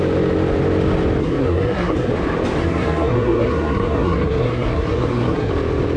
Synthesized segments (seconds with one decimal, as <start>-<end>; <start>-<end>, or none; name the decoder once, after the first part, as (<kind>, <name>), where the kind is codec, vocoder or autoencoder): 1.2-2.1 (codec, SNAC); 2.6-5.5